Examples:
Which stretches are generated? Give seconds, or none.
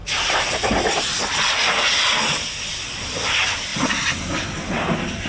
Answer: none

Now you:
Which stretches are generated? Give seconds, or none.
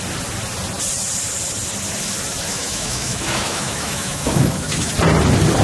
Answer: 2.5-4.9 (autoencoder, DAC-VAE)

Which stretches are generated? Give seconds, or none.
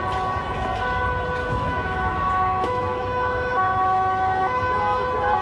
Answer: 1.4-4.6 (autoencoder, DAC-VAE)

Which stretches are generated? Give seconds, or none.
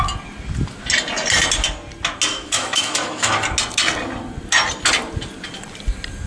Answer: 2.3-3.3 (autoencoder, DAC-VAE)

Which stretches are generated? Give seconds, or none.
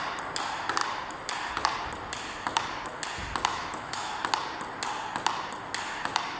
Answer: 3.5-4.1 (autoencoder, DAC-VAE)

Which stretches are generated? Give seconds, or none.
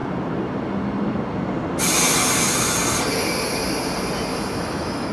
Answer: 4.3-5.1 (autoencoder, DAC-VAE)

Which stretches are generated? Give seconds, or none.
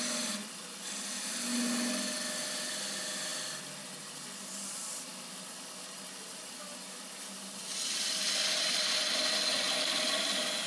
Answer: none